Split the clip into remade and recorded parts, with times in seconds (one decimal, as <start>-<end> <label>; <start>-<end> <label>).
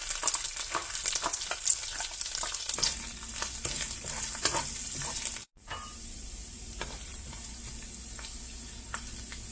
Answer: 0.0-7.1 recorded; 7.1-7.6 remade; 7.6-9.5 recorded